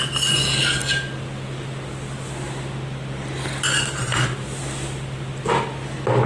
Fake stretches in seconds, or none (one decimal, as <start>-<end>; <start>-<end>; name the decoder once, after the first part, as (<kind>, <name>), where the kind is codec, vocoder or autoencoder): none